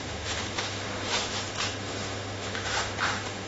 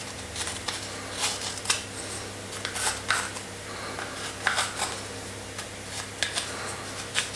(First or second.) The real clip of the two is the second